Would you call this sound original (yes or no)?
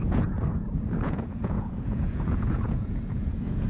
no